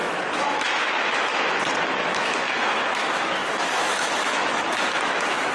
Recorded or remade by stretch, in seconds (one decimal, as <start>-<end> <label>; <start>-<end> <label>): 0.0-1.6 remade; 1.6-2.0 recorded; 2.0-5.5 remade